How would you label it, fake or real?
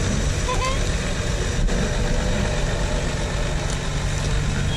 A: real